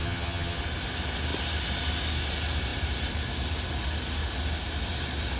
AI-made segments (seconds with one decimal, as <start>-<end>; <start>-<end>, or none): 0.0-0.6